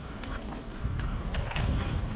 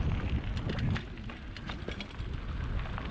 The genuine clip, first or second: second